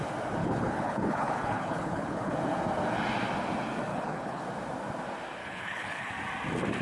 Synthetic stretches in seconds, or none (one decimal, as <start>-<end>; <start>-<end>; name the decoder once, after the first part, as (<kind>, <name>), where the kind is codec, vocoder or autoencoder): 0.4-2.3 (codec, HILCodec); 3.9-4.4; 5.4-6.1